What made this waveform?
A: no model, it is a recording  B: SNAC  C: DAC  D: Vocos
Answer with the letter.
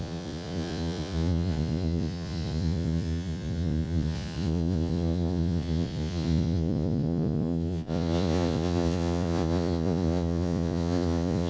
D